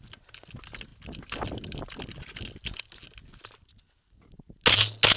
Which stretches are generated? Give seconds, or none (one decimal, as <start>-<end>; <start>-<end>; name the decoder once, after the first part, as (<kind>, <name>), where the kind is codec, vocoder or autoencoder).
none